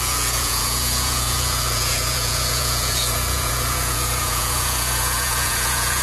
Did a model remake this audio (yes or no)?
yes